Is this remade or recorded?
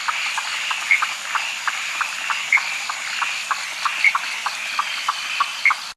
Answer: recorded